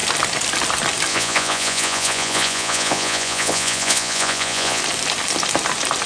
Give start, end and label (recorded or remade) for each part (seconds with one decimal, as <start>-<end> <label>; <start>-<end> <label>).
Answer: 0.0-1.1 recorded; 1.1-4.8 remade; 4.8-6.1 recorded